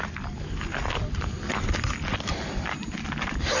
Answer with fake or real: real